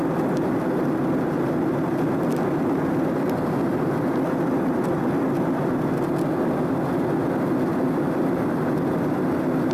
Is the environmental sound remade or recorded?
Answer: recorded